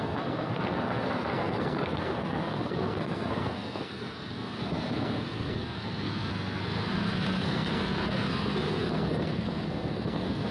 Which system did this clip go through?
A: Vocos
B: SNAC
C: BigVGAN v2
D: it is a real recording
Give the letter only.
B